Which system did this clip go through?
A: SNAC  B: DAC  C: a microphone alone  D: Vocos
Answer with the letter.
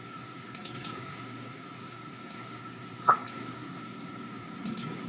A